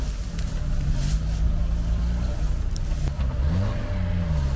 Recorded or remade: recorded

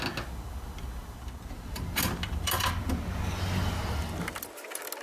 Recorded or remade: recorded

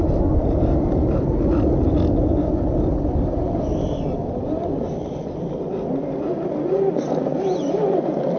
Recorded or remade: recorded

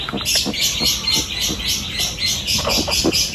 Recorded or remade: recorded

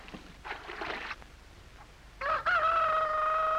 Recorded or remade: recorded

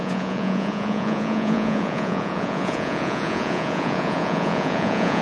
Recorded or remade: remade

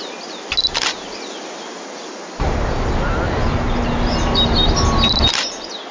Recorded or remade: recorded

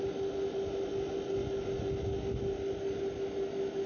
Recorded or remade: recorded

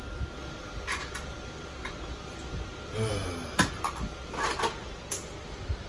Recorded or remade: recorded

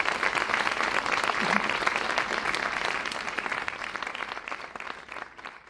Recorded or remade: recorded